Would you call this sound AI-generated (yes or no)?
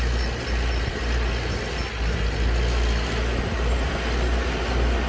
no